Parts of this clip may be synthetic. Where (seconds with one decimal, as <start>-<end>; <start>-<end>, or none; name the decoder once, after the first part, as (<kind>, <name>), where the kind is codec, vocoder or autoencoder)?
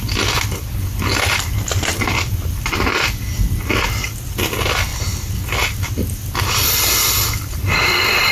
1.9-2.9 (vocoder, BigVGAN v2)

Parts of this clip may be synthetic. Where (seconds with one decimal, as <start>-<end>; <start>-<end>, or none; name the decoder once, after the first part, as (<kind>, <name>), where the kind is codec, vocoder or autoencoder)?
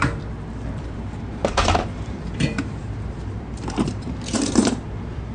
0.8-5.3 (vocoder, BigVGAN v2)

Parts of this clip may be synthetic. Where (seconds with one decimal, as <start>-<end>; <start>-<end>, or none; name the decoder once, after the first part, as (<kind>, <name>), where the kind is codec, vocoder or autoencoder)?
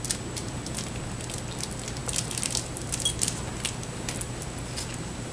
0.4-1.2 (vocoder, BigVGAN v2); 2.0-3.0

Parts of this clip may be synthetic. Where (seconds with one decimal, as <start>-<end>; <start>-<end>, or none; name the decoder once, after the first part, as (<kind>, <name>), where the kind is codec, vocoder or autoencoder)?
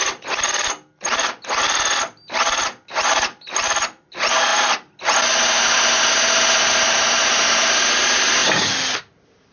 none